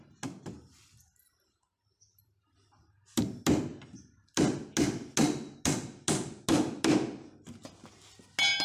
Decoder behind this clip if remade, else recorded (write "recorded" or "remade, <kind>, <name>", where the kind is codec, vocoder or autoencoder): recorded